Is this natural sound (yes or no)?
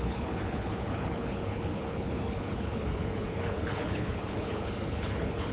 no